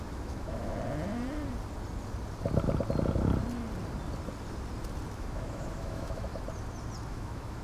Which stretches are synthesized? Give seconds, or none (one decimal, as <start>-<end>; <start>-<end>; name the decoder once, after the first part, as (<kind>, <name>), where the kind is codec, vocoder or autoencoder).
0.0-0.7 (autoencoder, DAC-VAE); 5.1-6.3; 7.1-7.6